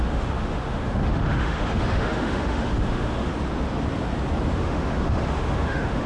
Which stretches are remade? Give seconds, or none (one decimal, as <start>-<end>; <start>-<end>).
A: 0.0-3.3; 4.5-6.1